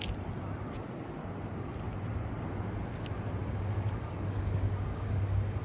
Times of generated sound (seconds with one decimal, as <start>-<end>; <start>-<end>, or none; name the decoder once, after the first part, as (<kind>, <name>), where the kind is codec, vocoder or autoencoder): 3.4-5.6 (codec, DAC)